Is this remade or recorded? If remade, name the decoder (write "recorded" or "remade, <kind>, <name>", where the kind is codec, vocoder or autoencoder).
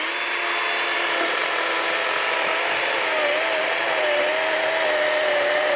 recorded